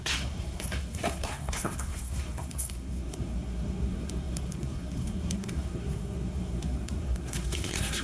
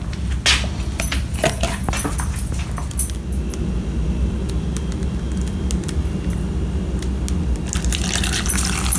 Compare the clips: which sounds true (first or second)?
second